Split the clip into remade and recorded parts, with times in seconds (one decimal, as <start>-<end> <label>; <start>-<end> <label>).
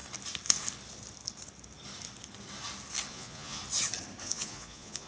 0.0-3.1 recorded; 3.1-3.6 remade; 3.6-4.2 recorded; 4.2-5.1 remade